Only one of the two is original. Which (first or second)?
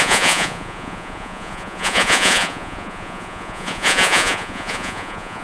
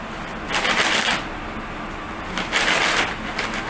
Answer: second